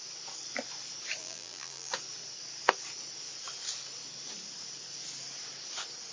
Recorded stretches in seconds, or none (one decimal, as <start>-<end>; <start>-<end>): 0.0-1.2; 1.9-6.1